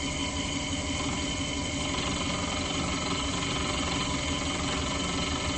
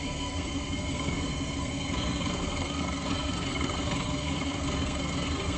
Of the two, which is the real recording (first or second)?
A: first